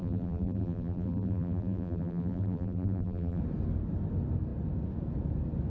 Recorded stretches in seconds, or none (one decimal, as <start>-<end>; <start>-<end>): 3.4-5.7

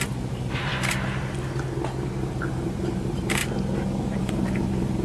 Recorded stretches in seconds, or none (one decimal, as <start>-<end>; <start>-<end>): 0.7-2.2; 3.4-4.2

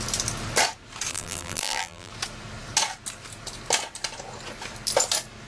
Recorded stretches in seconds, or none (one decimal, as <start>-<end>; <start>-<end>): 0.0-1.1; 2.1-5.5